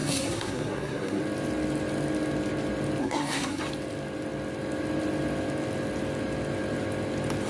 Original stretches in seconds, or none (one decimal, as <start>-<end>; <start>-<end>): 1.2-3.0; 3.6-7.5